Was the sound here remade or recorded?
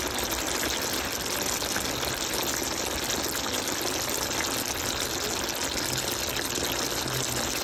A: recorded